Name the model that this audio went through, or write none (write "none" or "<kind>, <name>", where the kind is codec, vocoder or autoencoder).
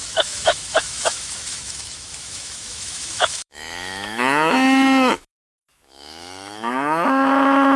autoencoder, DAC-VAE